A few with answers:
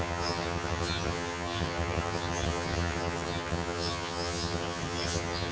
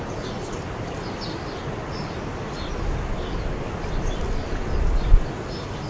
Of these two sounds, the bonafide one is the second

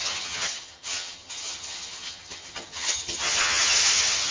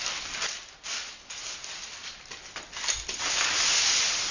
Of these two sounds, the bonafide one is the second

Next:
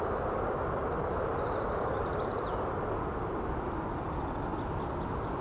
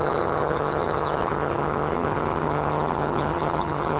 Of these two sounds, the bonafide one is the first